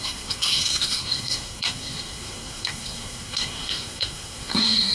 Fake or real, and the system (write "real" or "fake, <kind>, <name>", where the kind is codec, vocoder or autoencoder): fake, codec, SNAC